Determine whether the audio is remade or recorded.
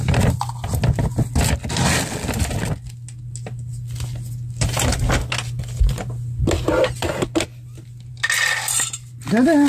recorded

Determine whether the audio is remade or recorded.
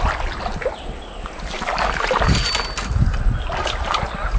recorded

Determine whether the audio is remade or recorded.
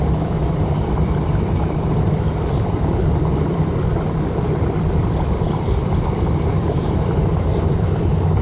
remade